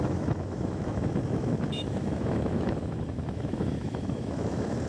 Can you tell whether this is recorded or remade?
remade